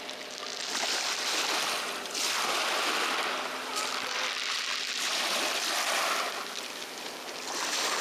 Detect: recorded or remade recorded